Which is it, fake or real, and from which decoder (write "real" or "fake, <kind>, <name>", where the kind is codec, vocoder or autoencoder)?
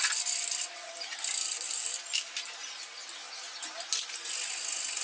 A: real